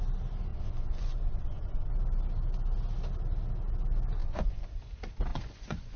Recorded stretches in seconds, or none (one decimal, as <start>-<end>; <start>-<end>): 0.0-0.5; 1.9-4.2; 4.8-5.3